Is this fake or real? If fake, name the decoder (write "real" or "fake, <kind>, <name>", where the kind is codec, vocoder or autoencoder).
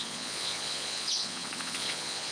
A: fake, vocoder, Vocos